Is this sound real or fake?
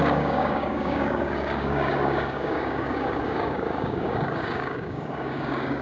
fake